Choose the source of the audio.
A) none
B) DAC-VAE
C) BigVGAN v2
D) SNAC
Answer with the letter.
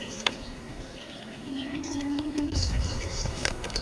D